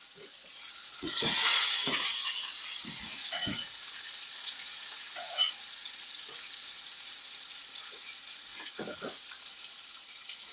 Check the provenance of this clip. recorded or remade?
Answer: remade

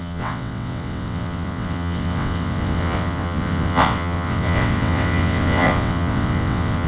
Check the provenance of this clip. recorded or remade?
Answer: remade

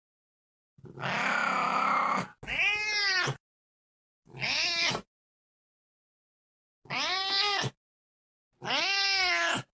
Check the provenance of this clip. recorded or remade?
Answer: recorded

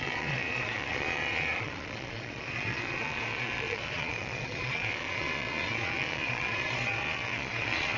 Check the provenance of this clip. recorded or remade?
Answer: remade